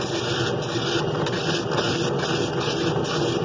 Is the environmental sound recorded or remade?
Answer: recorded